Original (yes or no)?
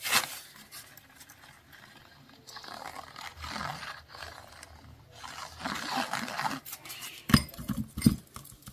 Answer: yes